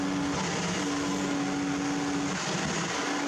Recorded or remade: recorded